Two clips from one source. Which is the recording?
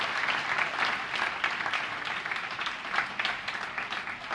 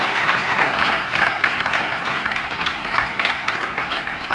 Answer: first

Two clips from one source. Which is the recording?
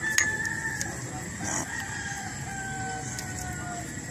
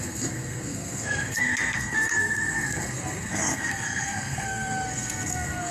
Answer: first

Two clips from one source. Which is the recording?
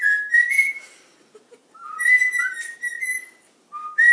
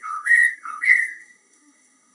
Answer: first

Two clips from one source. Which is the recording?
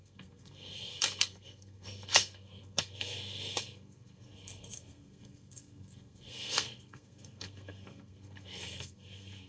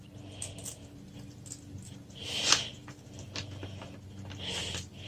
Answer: second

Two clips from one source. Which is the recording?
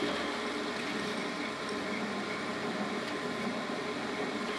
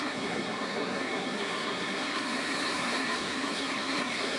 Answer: first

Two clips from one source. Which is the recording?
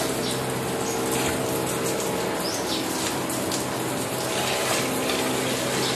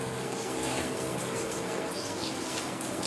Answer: first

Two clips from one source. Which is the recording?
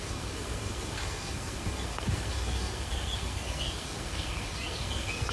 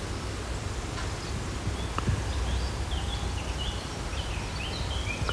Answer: second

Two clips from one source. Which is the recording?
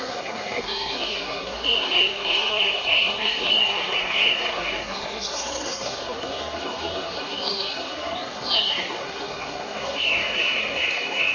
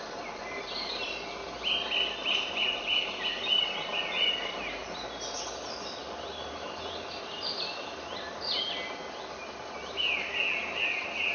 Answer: second